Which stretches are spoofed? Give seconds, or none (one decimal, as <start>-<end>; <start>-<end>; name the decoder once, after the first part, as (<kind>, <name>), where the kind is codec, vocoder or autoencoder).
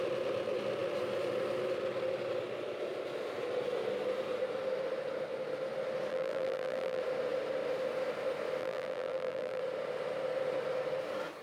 6.1-7.0 (vocoder, BigVGAN v2); 8.6-9.6